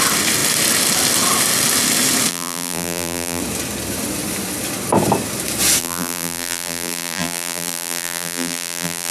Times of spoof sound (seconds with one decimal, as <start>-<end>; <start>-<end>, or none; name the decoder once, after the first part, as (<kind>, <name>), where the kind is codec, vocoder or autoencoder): 2.3-3.4 (vocoder, BigVGAN v2); 5.8-9.1